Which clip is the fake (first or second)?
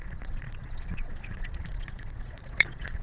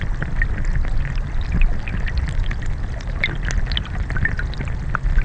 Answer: first